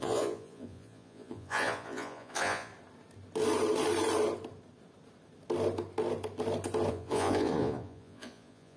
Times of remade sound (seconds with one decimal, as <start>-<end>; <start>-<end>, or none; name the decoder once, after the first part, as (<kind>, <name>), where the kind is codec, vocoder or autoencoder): 0.0-2.7 (vocoder, Vocos); 6.9-8.8

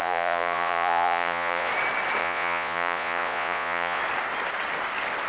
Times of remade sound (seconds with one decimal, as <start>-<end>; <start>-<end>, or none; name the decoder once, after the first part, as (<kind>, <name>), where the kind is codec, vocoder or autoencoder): 0.0-1.7 (vocoder, Vocos); 2.2-4.0

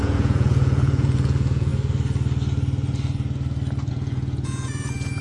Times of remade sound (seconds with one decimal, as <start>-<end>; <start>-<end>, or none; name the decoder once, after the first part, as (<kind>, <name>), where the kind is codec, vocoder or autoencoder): 0.0-1.7 (vocoder, Vocos); 3.9-5.2

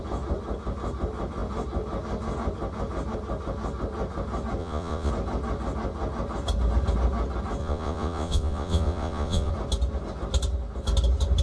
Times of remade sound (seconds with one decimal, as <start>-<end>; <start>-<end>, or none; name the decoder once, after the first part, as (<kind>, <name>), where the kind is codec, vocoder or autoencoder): 4.6-5.1 (vocoder, Vocos); 7.6-9.5

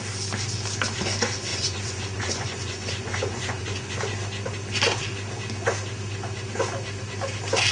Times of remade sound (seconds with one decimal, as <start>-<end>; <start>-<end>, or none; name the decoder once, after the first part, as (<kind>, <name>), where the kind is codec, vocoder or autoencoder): 1.5-4.0 (vocoder, Vocos)

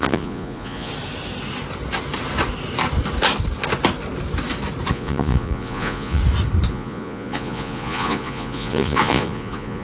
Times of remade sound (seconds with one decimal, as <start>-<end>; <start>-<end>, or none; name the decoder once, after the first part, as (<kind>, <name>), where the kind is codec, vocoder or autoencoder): 0.0-0.9 (vocoder, Vocos); 4.9-6.2; 6.7-9.8